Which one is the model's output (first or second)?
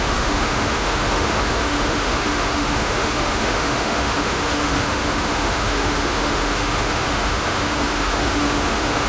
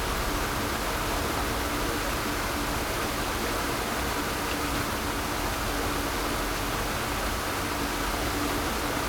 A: first